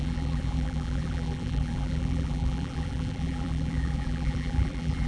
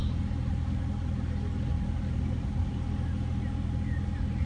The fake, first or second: first